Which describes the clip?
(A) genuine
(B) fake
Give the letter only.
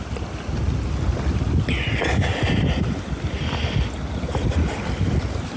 A